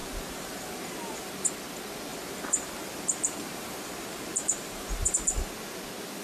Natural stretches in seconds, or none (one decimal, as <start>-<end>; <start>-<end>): 1.3-2.1; 5.4-6.2